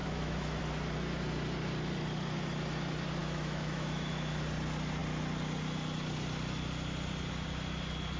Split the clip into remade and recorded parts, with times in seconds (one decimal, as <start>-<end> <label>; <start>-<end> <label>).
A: 0.0-0.6 remade; 0.6-3.2 recorded; 3.2-4.4 remade; 4.4-8.2 recorded